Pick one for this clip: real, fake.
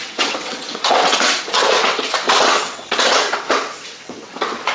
fake